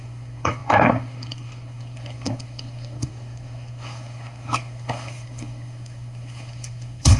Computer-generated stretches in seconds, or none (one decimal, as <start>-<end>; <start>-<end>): 0.0-7.2